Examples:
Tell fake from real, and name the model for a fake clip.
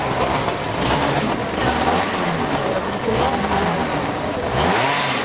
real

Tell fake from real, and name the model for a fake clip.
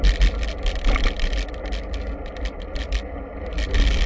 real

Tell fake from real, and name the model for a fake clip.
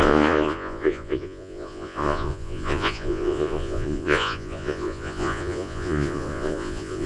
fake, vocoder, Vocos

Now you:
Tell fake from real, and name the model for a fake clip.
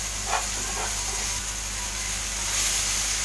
real